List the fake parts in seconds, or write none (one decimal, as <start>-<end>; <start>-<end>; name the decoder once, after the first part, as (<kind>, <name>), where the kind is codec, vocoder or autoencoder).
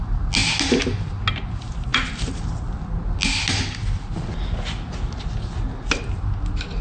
none